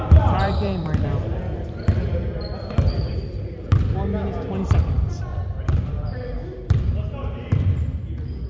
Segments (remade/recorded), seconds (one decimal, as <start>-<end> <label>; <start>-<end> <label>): 0.0-0.4 recorded; 0.4-1.4 remade; 1.4-5.3 recorded; 5.3-6.9 remade; 6.9-8.5 recorded